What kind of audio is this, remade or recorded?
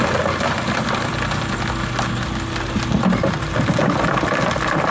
recorded